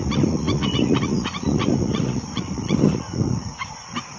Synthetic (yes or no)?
yes